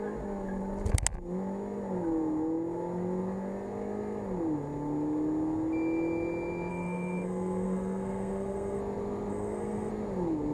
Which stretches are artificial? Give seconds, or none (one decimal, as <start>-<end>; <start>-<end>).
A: 6.7-8.8; 9.3-9.9